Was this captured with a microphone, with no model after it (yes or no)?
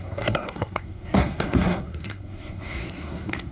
no